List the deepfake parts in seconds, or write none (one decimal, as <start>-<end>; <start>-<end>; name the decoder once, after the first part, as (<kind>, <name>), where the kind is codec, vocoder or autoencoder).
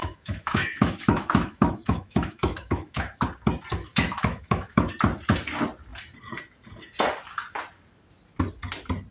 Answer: 0.0-3.2 (autoencoder, DAC-VAE); 3.9-4.9